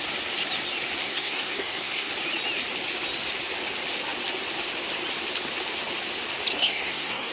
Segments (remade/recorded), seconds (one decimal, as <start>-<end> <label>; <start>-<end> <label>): 0.0-1.0 recorded; 1.0-2.1 remade; 2.1-6.5 recorded; 6.5-7.3 remade

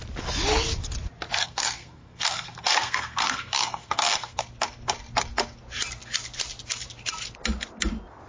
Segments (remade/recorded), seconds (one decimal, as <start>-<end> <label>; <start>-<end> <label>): 0.0-1.4 recorded; 1.4-4.4 remade; 4.4-8.3 recorded